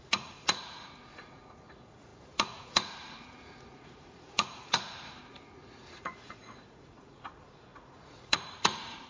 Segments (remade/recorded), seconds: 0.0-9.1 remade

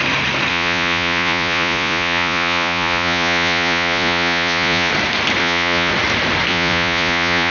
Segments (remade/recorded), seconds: 0.0-0.5 recorded; 0.5-4.9 remade; 4.9-5.4 recorded; 5.4-5.9 remade; 5.9-6.5 recorded; 6.5-7.5 remade

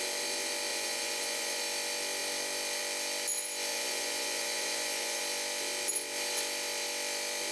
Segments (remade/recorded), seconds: 0.0-0.7 recorded; 0.7-1.6 remade; 1.6-3.7 recorded; 3.7-5.2 remade; 5.2-7.5 recorded

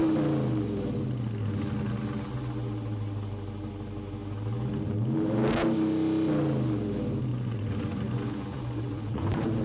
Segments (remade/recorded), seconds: 0.0-7.3 recorded; 7.3-9.6 remade

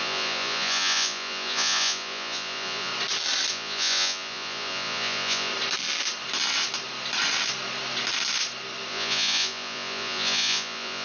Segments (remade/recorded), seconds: 0.0-2.9 remade; 2.9-3.5 recorded; 3.5-5.5 remade; 5.5-8.9 recorded; 8.9-11.0 remade

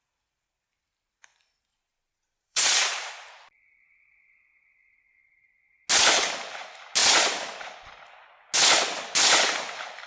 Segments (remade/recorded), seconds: 0.0-1.7 recorded; 1.7-3.1 remade; 3.1-10.1 recorded